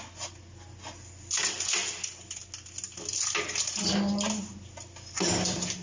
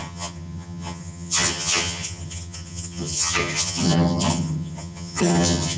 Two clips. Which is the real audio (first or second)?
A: first